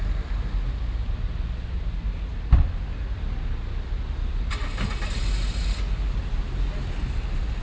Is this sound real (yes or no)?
yes